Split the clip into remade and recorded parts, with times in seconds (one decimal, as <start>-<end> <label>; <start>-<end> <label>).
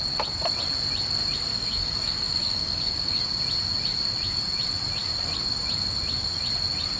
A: 0.0-1.5 recorded; 1.5-3.2 remade; 3.2-7.0 recorded